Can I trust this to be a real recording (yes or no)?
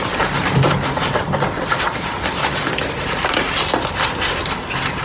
no